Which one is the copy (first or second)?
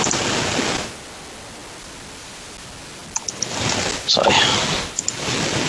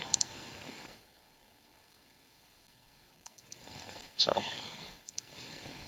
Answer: second